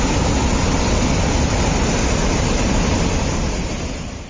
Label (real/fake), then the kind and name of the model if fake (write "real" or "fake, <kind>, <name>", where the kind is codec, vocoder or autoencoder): real